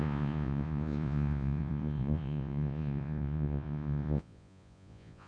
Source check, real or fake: fake